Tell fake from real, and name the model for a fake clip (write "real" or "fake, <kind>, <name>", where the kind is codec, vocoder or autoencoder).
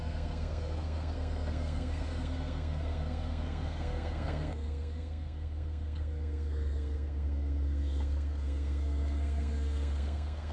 fake, codec, SNAC